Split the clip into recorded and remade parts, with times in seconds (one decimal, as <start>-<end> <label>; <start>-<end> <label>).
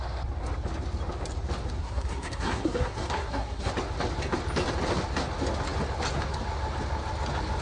0.0-1.8 recorded; 1.8-3.7 remade; 3.7-7.6 recorded